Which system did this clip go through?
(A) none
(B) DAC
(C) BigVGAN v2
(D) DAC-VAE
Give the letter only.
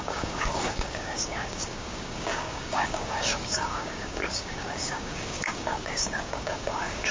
B